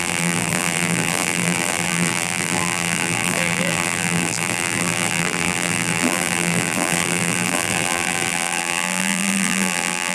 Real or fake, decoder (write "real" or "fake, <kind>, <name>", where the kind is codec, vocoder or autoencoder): fake, vocoder, BigVGAN v2